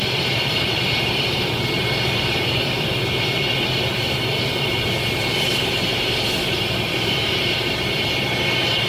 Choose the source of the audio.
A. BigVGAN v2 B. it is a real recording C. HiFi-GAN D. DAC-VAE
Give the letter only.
A